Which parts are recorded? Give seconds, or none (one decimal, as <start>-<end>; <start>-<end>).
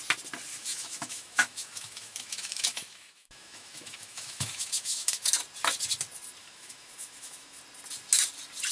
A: 0.0-0.5; 5.3-6.4; 7.6-8.7